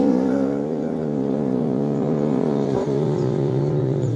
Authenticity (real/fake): fake